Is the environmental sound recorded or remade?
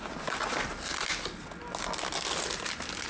recorded